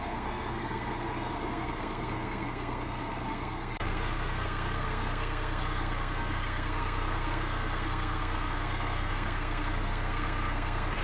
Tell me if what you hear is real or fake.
fake